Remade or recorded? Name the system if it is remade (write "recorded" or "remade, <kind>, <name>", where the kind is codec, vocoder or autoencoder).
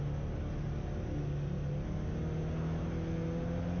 recorded